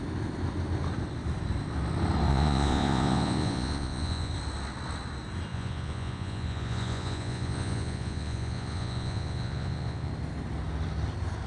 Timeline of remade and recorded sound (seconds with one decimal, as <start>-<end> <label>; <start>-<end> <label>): 0.0-2.3 recorded; 2.3-4.3 remade; 4.3-5.5 recorded; 5.5-10.1 remade; 10.1-11.5 recorded